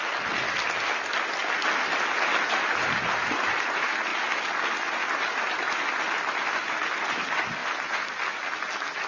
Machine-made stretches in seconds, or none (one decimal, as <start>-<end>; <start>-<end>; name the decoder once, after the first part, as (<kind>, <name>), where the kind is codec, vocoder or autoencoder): none